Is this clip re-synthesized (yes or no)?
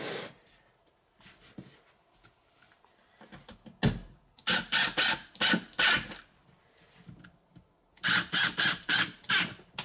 no